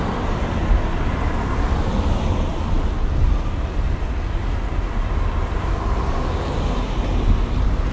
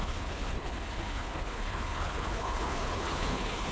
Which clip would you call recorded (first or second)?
first